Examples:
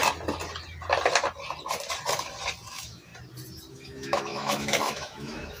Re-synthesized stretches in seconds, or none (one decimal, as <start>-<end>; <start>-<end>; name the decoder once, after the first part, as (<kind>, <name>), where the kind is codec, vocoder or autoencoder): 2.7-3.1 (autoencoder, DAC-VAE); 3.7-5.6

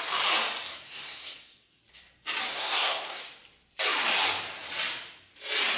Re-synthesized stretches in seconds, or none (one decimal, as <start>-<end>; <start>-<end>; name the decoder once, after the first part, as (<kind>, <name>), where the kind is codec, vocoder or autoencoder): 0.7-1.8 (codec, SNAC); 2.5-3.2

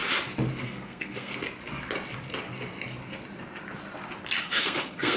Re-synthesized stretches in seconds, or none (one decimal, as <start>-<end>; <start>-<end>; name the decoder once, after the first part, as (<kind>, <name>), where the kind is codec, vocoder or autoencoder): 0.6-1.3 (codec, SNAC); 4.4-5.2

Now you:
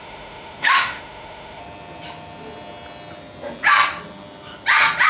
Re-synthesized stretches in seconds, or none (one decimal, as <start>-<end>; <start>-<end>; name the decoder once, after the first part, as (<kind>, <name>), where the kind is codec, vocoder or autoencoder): 0.0-1.6 (autoencoder, DAC-VAE)

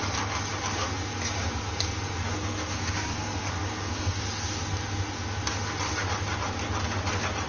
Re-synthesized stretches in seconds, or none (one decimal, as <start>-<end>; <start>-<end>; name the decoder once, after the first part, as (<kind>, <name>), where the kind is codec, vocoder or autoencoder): 2.3-4.2 (codec, SNAC)

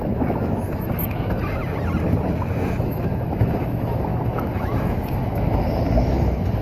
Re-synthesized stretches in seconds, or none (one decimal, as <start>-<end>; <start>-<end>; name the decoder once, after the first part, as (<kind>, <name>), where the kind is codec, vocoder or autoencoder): 0.0-1.6 (autoencoder, DAC-VAE); 2.8-6.6

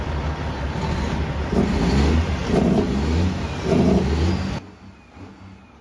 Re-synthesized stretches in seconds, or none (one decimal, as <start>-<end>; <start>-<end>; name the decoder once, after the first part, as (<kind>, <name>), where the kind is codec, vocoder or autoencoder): none